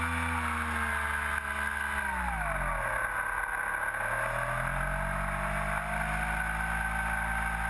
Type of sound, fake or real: real